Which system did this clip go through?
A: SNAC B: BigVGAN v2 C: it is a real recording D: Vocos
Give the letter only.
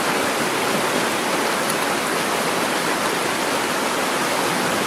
C